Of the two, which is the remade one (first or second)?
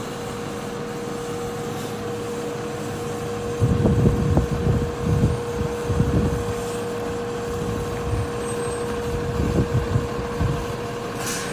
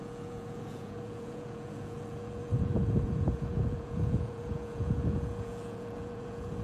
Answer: second